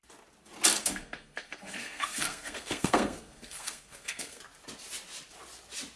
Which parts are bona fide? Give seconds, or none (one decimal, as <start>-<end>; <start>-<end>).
0.0-0.8; 4.4-6.0

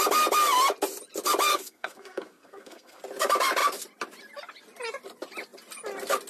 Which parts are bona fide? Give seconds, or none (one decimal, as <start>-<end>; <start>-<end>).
0.0-1.5; 3.0-6.3

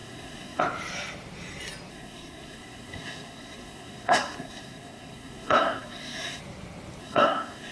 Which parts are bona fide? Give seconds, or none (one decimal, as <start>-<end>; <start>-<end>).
0.6-1.9; 6.4-7.0

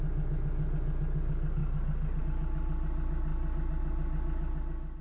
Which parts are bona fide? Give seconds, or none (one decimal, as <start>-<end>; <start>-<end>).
0.0-5.0

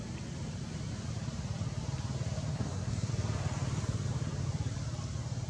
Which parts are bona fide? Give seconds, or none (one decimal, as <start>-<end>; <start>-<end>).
0.0-2.5; 3.1-5.5

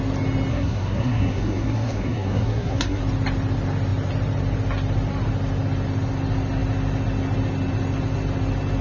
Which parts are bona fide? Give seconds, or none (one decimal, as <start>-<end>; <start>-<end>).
0.0-0.5; 3.0-8.8

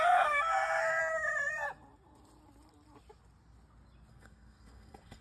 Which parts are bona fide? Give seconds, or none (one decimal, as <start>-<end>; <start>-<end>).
1.0-4.1